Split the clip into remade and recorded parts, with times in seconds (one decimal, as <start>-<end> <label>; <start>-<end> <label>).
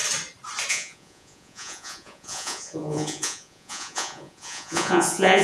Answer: 0.0-0.7 recorded; 0.7-5.4 remade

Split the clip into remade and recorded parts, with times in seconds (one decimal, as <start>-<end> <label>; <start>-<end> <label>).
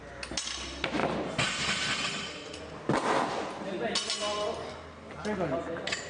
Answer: 0.0-6.1 recorded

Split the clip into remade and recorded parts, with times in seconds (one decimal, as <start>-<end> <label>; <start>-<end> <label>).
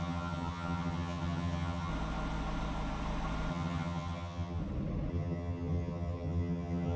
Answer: 0.0-1.9 remade; 1.9-3.5 recorded; 3.5-4.6 remade; 4.6-5.1 recorded; 5.1-7.0 remade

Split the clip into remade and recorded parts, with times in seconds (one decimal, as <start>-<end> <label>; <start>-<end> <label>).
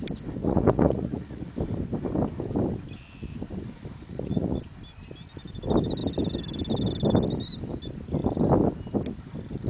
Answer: 0.0-0.4 recorded; 0.4-1.5 remade; 1.5-4.0 recorded; 4.0-4.6 remade; 4.6-9.7 recorded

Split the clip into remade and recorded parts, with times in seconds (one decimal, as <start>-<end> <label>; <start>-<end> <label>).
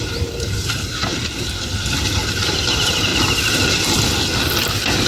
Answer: 0.0-1.1 remade; 1.1-2.3 recorded; 2.3-3.1 remade; 3.1-5.1 recorded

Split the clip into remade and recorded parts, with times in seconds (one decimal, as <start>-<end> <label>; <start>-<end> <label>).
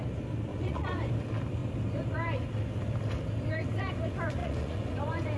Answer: 0.0-0.5 recorded; 0.5-1.1 remade; 1.1-4.4 recorded; 4.4-5.4 remade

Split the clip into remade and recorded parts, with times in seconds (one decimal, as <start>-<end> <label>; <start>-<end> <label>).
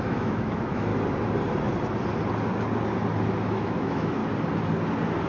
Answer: 0.0-0.9 remade; 0.9-3.5 recorded; 3.5-4.2 remade; 4.2-5.3 recorded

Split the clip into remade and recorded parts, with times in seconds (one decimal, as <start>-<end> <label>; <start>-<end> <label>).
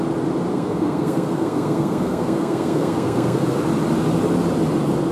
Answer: 0.0-0.5 recorded; 0.5-3.6 remade; 3.6-5.1 recorded